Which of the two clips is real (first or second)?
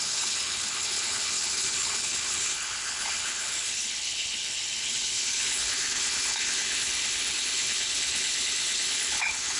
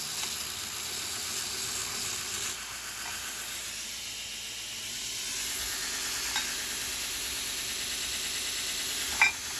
second